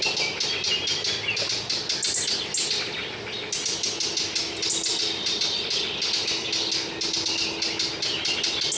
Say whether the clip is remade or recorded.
recorded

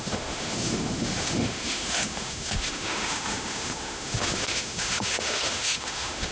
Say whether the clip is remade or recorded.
remade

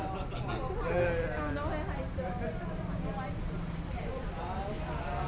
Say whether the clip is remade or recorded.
recorded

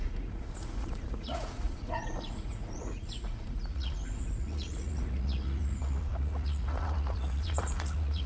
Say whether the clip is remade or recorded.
remade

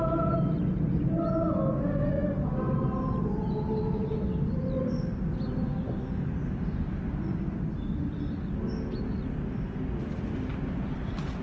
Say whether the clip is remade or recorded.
recorded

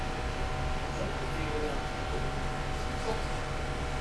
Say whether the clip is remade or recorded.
recorded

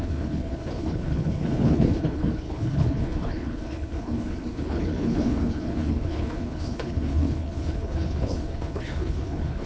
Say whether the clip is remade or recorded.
remade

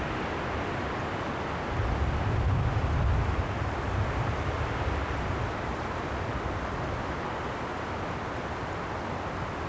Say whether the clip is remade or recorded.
recorded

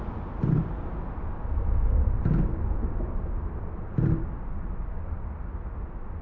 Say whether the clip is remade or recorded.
recorded